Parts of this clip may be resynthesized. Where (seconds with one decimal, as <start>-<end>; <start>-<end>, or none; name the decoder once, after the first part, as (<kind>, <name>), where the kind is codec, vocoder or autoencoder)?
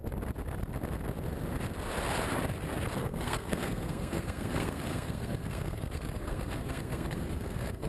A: 3.0-7.9 (codec, SNAC)